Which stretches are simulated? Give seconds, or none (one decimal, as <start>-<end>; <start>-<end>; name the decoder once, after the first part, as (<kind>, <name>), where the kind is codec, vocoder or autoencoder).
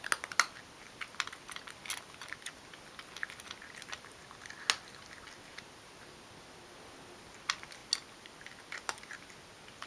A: none